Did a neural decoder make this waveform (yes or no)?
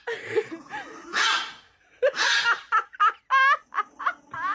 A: no